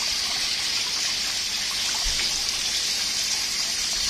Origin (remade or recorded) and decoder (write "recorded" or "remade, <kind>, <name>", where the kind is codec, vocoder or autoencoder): recorded